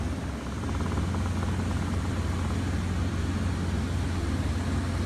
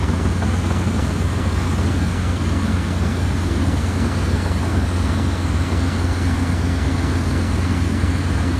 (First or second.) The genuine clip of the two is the first